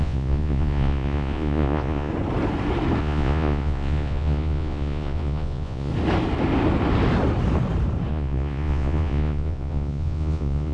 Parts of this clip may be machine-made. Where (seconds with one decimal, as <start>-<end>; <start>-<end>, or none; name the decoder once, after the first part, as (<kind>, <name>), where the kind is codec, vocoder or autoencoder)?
0.0-2.1 (vocoder, Vocos); 3.0-5.9; 8.1-10.7